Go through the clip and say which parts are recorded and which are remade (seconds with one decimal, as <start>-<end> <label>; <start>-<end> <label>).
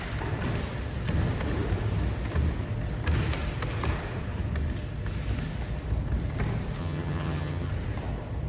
0.0-6.8 recorded; 6.8-7.7 remade; 7.7-8.5 recorded